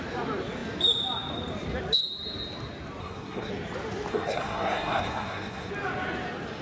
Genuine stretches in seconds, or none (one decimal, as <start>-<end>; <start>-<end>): 0.0-3.0; 3.5-4.1; 5.7-6.6